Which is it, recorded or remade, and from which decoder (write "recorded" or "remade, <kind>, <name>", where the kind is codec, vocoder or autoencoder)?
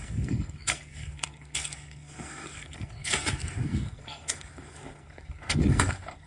remade, codec, SNAC